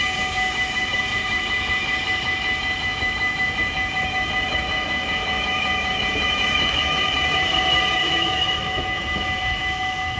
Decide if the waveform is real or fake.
fake